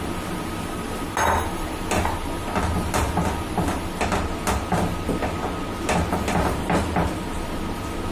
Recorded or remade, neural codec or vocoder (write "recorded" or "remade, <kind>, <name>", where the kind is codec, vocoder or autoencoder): recorded